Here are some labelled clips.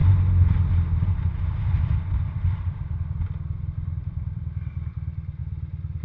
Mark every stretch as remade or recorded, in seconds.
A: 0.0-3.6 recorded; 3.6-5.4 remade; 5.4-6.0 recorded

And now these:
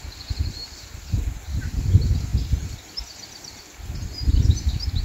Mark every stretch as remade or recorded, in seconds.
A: 0.0-0.7 remade; 0.7-5.0 recorded

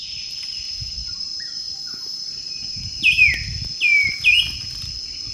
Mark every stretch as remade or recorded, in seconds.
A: 0.0-2.9 remade; 2.9-5.3 recorded

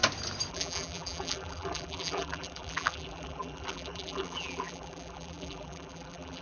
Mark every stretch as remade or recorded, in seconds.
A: 0.0-0.5 recorded; 0.5-6.4 remade

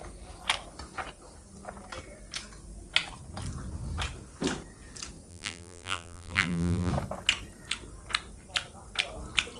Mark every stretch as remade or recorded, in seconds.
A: 0.0-5.3 recorded; 5.3-6.9 remade; 6.9-9.6 recorded

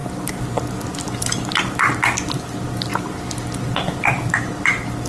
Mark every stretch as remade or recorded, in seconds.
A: 0.0-5.1 recorded

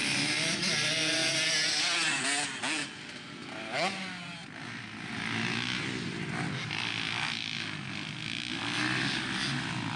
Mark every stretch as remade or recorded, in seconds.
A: 0.0-10.0 recorded

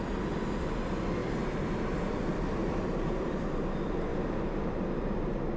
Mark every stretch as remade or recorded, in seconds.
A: 0.0-2.6 recorded; 2.6-3.3 remade; 3.3-4.1 recorded; 4.1-4.7 remade; 4.7-5.6 recorded